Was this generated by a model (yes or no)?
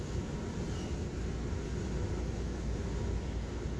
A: no